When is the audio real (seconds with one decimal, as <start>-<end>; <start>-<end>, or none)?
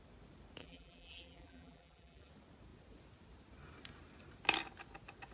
0.0-0.6; 2.3-5.3